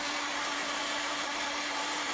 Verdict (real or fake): fake